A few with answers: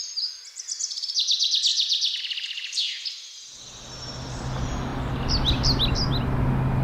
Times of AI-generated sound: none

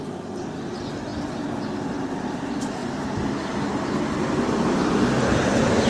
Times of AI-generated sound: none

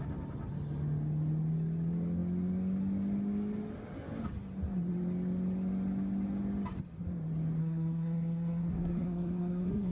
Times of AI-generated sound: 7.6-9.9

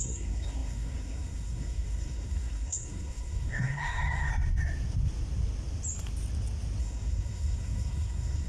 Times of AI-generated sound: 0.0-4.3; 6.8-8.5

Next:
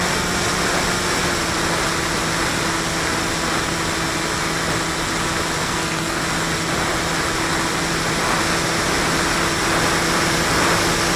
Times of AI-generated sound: 5.6-6.2

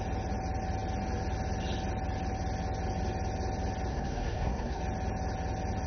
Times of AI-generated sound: 3.9-4.8